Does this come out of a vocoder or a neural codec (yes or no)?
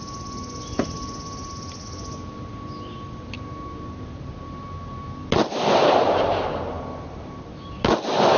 no